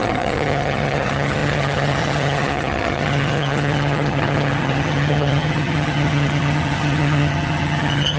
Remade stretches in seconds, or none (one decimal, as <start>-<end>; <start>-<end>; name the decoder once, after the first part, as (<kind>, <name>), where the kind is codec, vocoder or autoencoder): 0.0-8.2 (vocoder, HiFi-GAN)